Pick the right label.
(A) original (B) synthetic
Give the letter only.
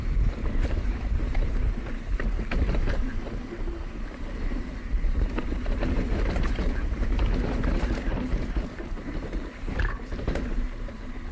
B